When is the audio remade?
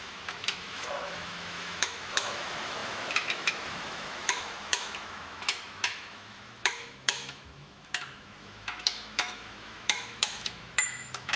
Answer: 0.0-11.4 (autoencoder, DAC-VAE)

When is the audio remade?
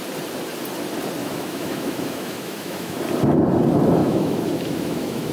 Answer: 1.2-3.0 (autoencoder, DAC-VAE); 4.0-5.3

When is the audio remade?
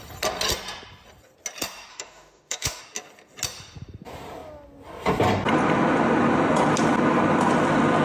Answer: 1.9-2.8 (autoencoder, DAC-VAE)